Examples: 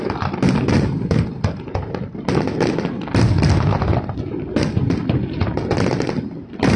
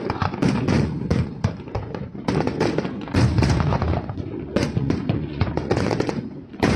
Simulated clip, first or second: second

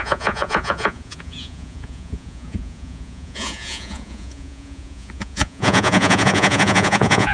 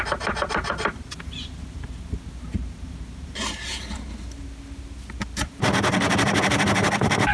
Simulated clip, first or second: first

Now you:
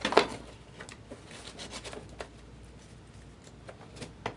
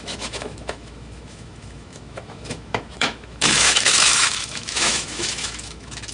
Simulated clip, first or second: second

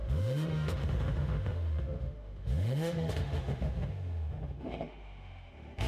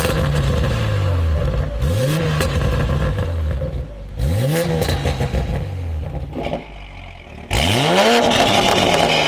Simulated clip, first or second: first